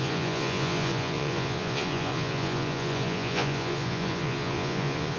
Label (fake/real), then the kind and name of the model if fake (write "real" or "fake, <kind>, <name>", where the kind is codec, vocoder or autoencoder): fake, vocoder, Vocos